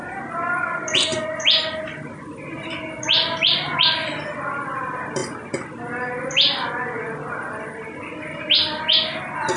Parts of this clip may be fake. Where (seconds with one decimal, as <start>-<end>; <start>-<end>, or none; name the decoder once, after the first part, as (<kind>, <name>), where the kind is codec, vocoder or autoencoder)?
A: none